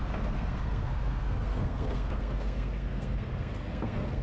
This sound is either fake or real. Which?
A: fake